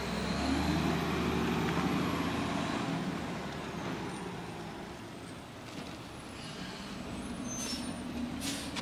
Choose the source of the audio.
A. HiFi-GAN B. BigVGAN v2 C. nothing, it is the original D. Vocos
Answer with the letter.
C